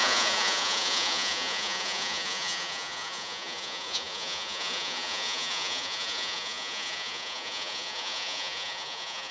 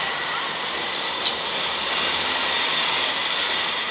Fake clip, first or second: first